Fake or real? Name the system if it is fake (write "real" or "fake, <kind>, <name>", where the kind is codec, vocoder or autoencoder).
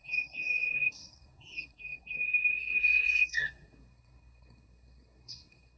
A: fake, codec, SNAC